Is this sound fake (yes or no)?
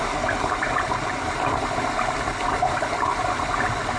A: no